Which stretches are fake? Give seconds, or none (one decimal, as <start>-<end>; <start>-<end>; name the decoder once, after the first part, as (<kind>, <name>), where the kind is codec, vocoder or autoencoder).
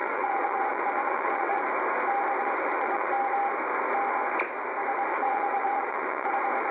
0.0-1.6 (vocoder, WaveNeXt); 2.4-3.1; 5.1-6.3